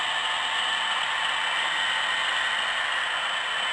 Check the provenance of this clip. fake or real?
real